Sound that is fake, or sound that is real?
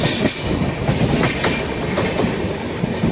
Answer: real